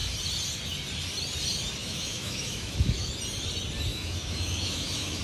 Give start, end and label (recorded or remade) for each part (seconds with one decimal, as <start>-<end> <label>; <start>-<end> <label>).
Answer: 0.0-1.8 recorded; 1.8-3.1 remade; 3.1-3.9 recorded; 3.9-5.2 remade